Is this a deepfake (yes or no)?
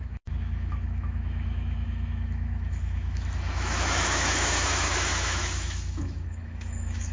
yes